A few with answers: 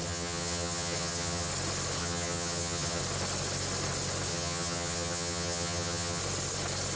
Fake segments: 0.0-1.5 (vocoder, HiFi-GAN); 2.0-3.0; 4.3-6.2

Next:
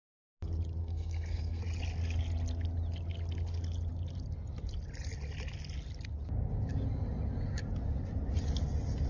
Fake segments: 0.8-1.6 (codec, SNAC)

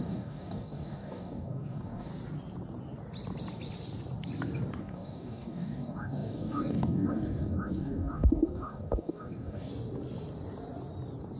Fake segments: 0.0-2.1 (codec, DAC); 4.8-9.7

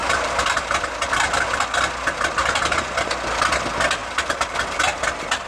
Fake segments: 0.0-0.8 (vocoder, BigVGAN v2); 2.4-3.1; 4.0-4.5

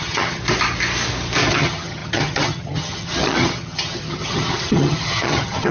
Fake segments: 0.0-0.4 (vocoder, HiFi-GAN); 1.5-5.7

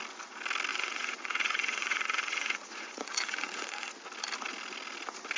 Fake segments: 0.7-3.9 (vocoder, Vocos)

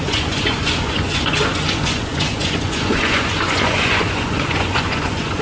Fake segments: 0.0-5.4 (vocoder, Vocos)

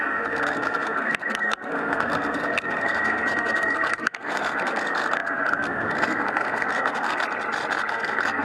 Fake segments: 0.0-7.2 (codec, SNAC); 7.9-8.4